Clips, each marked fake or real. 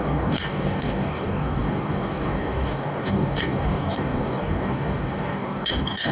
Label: fake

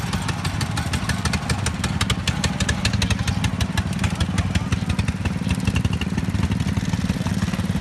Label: real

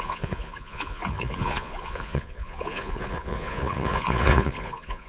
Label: fake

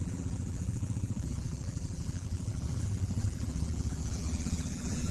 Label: fake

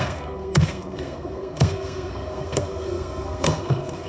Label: fake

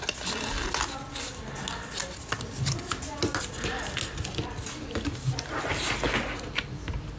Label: real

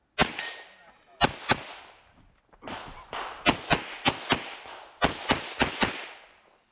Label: real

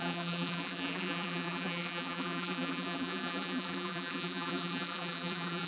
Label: fake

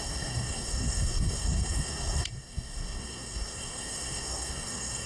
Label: fake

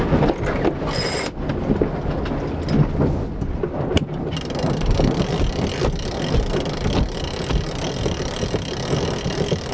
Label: real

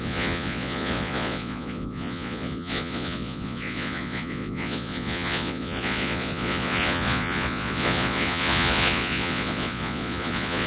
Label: fake